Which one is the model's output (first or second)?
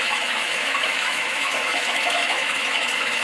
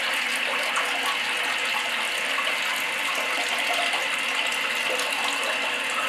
first